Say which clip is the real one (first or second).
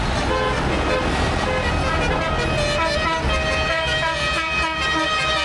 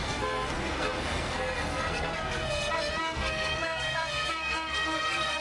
first